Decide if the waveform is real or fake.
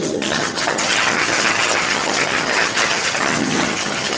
fake